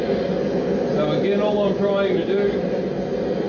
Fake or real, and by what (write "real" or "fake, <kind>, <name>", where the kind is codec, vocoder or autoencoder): real